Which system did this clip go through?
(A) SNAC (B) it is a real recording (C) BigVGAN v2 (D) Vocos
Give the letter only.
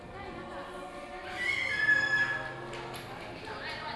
B